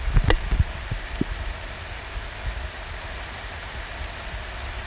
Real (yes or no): yes